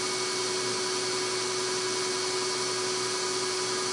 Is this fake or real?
real